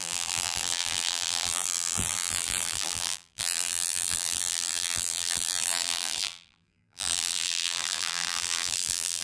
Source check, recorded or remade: remade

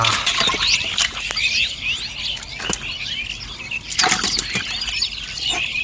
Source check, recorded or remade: recorded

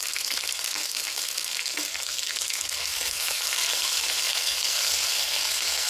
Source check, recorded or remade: remade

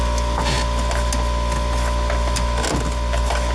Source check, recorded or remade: recorded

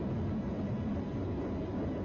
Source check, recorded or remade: recorded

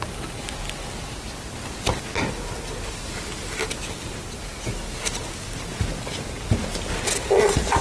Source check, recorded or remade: recorded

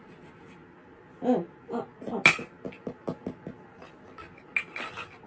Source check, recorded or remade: recorded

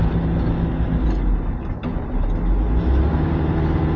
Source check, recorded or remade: recorded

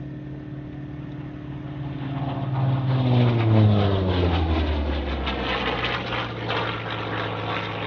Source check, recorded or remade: recorded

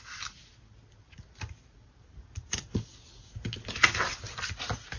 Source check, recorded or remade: recorded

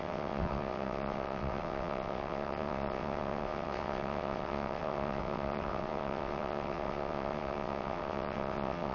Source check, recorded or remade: remade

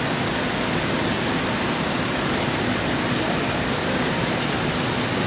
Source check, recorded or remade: recorded